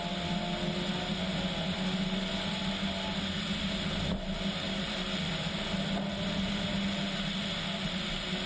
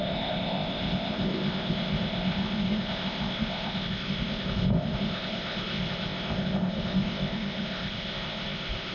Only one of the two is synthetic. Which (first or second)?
second